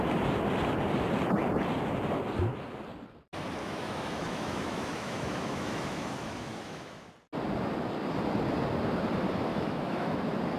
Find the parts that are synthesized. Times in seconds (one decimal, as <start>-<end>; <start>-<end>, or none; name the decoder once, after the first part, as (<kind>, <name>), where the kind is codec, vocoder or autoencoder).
3.6-7.1 (autoencoder, DAC-VAE); 9.5-10.2